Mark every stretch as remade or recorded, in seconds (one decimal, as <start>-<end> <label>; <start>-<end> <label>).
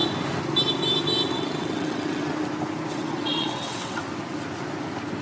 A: 0.0-1.3 recorded; 1.3-2.3 remade; 2.3-2.9 recorded; 2.9-4.0 remade; 4.0-5.2 recorded